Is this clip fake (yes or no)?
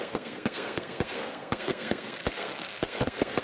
yes